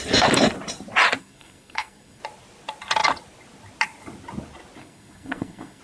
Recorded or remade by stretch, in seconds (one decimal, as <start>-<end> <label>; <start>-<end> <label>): 0.0-1.2 recorded; 1.2-2.2 remade; 2.2-4.8 recorded; 4.8-5.8 remade